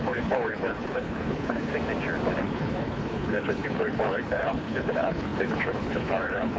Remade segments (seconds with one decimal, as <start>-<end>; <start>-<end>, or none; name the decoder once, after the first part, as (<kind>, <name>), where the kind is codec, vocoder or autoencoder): 0.0-1.7 (codec, HILCodec); 2.4-6.6